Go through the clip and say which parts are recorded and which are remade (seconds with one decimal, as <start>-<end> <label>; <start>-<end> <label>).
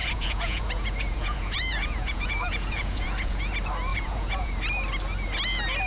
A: 0.0-3.5 remade; 3.5-3.9 recorded; 3.9-4.5 remade; 4.5-5.9 recorded